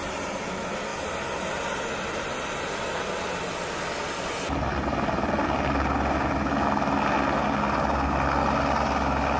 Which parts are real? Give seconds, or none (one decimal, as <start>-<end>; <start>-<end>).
0.0-9.4